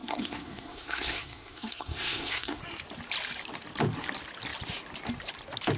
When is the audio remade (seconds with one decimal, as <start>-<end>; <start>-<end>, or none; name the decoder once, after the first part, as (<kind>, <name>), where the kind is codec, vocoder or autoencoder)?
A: 0.0-2.6 (codec, SNAC)